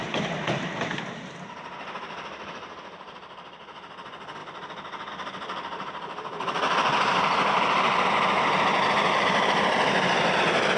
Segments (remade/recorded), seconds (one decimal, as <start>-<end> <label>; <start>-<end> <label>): 0.0-10.8 recorded